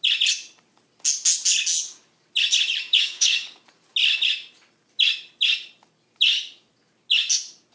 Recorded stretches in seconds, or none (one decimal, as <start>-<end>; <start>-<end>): 0.0-2.9; 3.6-7.7